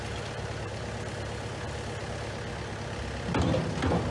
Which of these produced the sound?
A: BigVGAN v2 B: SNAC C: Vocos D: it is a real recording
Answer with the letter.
D